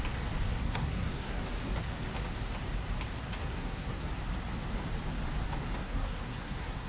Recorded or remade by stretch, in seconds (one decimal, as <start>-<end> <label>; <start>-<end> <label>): 0.0-0.6 recorded; 0.6-1.4 remade; 1.4-3.4 recorded; 3.4-4.1 remade; 4.1-5.8 recorded; 5.8-6.9 remade